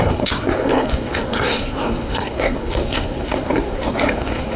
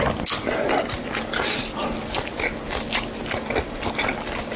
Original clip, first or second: second